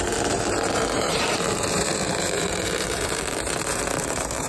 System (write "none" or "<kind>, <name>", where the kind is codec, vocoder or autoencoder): vocoder, BigVGAN v2